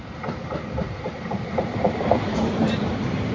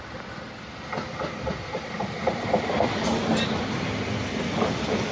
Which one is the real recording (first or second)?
second